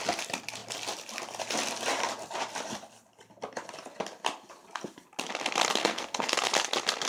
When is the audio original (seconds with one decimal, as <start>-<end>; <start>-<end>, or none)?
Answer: 0.0-5.8; 6.5-7.1